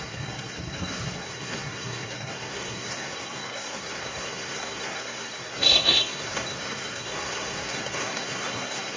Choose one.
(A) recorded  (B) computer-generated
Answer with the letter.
B